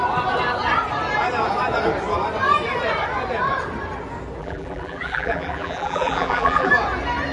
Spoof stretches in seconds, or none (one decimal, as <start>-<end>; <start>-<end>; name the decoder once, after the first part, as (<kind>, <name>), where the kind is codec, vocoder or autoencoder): 4.4-6.7 (vocoder, BigVGAN v2)